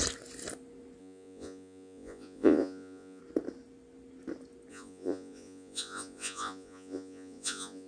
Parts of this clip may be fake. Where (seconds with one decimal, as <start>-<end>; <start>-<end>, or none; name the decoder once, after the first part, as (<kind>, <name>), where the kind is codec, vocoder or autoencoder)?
1.0-3.2 (vocoder, Vocos); 4.7-7.9

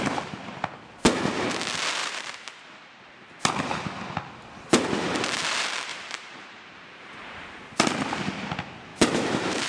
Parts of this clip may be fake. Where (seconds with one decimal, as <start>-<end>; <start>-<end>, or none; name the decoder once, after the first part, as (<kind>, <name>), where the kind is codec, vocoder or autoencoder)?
2.0-3.0 (vocoder, BigVGAN v2); 5.9-7.4; 8.9-9.7

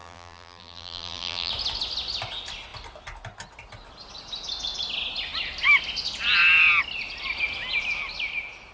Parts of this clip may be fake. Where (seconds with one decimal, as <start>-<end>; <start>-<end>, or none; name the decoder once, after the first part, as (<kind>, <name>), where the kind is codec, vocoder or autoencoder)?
0.0-1.5 (vocoder, BigVGAN v2)

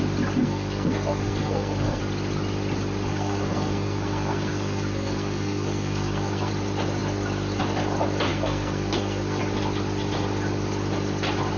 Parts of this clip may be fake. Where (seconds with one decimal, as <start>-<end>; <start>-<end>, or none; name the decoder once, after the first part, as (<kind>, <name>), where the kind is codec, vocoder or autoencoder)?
0.4-2.0 (codec, SNAC); 3.1-6.5; 8.3-9.4

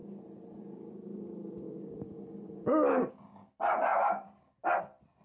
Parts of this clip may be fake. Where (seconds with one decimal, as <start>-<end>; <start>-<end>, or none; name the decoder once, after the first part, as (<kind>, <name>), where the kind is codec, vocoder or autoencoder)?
none

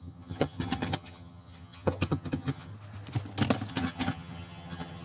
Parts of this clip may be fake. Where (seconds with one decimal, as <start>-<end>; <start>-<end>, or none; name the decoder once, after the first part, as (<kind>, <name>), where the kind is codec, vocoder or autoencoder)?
0.0-2.7 (vocoder, HiFi-GAN); 3.7-5.0

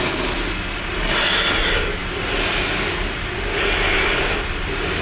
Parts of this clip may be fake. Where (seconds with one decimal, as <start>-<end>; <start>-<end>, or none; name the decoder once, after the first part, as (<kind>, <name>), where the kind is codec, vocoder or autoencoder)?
none

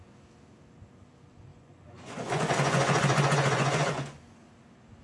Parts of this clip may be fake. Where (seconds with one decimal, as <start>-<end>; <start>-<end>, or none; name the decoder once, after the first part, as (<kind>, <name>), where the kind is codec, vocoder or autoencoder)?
1.5-4.5 (vocoder, Vocos)